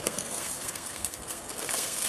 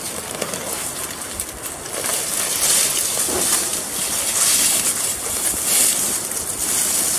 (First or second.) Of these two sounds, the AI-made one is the first